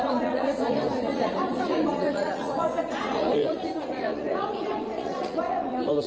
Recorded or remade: remade